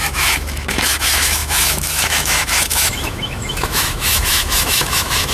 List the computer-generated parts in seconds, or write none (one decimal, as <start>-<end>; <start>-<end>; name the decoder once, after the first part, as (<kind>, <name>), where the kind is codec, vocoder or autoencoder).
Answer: 0.0-5.3 (autoencoder, DAC-VAE)